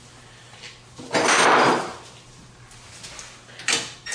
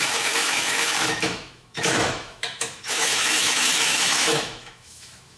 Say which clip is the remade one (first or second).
second